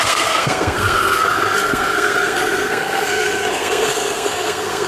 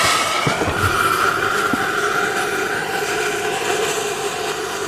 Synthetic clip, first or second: first